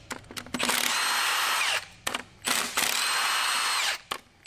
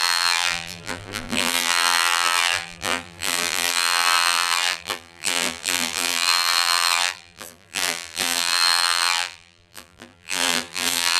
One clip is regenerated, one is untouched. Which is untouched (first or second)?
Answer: first